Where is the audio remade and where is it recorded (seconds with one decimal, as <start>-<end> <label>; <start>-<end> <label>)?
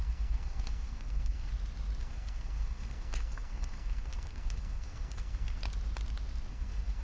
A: 0.0-1.5 remade; 1.5-2.0 recorded; 2.0-5.6 remade; 5.6-6.5 recorded; 6.5-7.0 remade